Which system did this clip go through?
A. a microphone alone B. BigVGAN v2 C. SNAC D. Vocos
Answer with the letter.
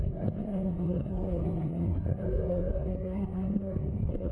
C